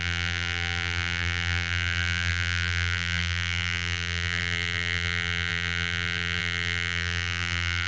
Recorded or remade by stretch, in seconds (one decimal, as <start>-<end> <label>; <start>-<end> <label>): 0.0-7.9 remade